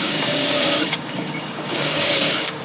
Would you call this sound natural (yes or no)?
no